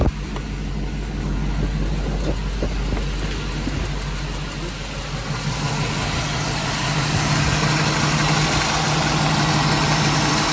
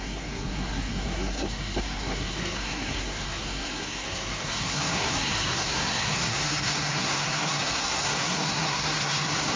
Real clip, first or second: first